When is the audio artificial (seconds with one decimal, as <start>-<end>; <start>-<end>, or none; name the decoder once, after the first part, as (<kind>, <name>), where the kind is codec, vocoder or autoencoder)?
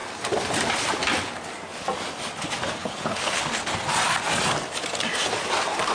2.8-3.4 (codec, HILCodec)